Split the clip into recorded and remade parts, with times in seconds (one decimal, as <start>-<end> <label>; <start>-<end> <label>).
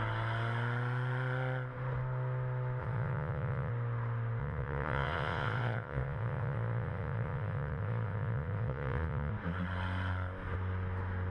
0.0-2.8 recorded; 2.8-3.7 remade; 3.7-4.4 recorded; 4.4-9.3 remade; 9.3-11.3 recorded